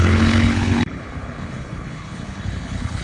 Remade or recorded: remade